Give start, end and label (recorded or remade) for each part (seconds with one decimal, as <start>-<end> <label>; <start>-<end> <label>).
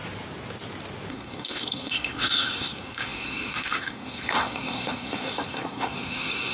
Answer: 0.0-1.1 recorded; 1.1-6.5 remade